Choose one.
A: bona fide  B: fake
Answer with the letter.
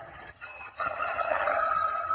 B